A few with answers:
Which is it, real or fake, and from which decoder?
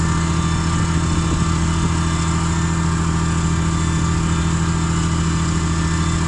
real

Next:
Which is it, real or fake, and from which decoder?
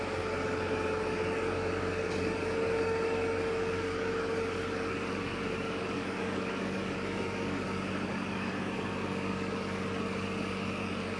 fake, codec, DAC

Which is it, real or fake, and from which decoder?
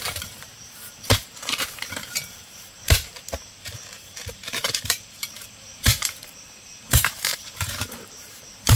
fake, vocoder, BigVGAN v2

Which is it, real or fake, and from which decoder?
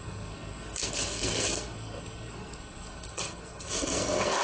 fake, codec, SNAC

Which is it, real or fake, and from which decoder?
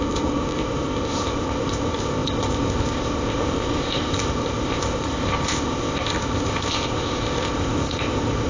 fake, codec, ZipCodec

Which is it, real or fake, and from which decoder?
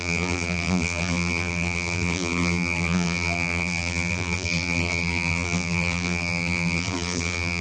fake, vocoder, BigVGAN v2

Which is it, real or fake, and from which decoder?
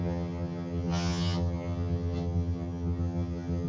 fake, vocoder, HiFi-GAN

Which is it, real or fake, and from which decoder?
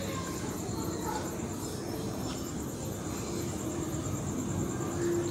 real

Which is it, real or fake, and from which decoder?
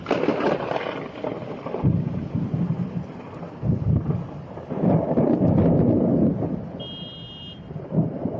real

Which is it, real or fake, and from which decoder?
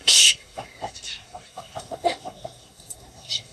fake, codec, SNAC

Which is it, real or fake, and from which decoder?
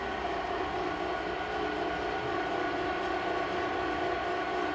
real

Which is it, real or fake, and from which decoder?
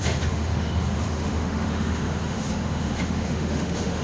fake, autoencoder, DAC-VAE